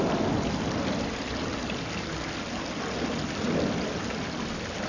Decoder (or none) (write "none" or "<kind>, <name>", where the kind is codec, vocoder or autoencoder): none